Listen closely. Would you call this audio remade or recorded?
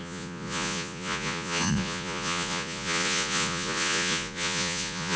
remade